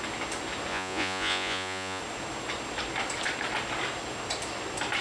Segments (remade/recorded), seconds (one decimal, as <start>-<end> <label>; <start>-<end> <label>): 0.0-0.7 recorded; 0.7-2.0 remade; 2.0-5.0 recorded

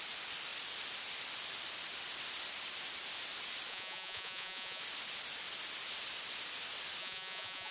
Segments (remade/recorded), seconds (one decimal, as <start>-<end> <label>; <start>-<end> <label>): 0.0-3.7 recorded; 3.7-4.8 remade; 4.8-7.0 recorded; 7.0-7.7 remade

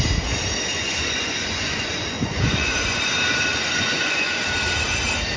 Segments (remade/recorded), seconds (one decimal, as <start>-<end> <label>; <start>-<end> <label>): 0.0-0.7 recorded; 0.7-3.1 remade; 3.1-3.5 recorded; 3.5-4.4 remade; 4.4-5.4 recorded

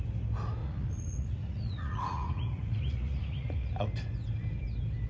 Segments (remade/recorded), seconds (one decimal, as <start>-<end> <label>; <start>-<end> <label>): 0.0-0.6 recorded; 0.6-3.7 remade; 3.7-5.1 recorded